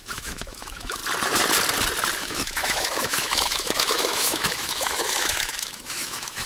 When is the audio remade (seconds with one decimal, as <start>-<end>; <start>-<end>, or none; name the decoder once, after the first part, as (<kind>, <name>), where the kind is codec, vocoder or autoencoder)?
0.0-1.0 (autoencoder, DAC-VAE); 2.2-6.5